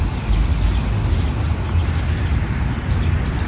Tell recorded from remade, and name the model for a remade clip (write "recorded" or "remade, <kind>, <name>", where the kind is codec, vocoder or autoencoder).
recorded